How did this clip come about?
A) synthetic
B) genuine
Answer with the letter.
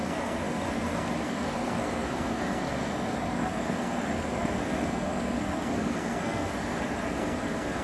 A